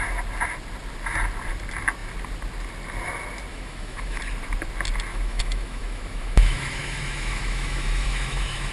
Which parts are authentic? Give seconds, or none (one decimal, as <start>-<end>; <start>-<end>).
0.0-3.5; 4.2-5.1